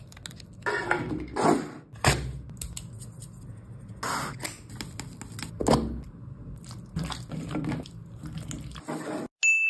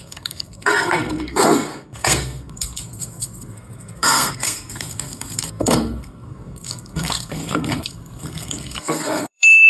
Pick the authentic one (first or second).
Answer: first